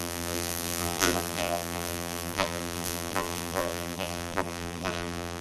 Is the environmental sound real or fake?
fake